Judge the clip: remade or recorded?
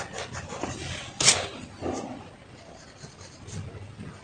recorded